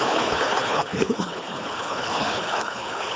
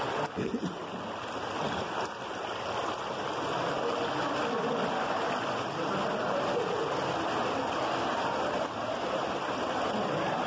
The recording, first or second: second